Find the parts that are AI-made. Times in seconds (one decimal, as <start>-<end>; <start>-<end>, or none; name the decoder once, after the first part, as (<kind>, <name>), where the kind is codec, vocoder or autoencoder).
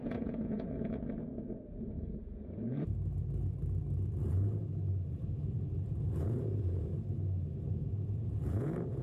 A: 0.0-2.9 (vocoder, Vocos); 5.1-6.9; 7.7-9.0